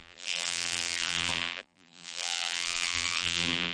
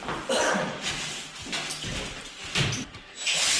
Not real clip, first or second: first